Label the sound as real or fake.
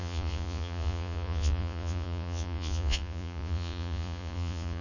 fake